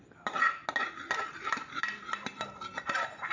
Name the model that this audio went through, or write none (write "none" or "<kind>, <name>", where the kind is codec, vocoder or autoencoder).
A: none